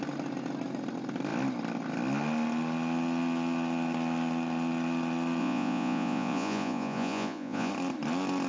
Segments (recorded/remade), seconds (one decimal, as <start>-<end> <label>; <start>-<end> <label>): 0.0-5.4 recorded; 5.4-7.7 remade; 7.7-8.5 recorded